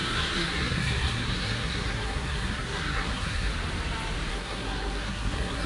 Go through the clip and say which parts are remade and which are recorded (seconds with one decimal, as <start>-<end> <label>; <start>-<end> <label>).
0.0-3.5 remade; 3.5-4.3 recorded; 4.3-5.7 remade